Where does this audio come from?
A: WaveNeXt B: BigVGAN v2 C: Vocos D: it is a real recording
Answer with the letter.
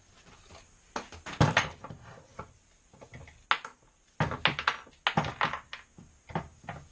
D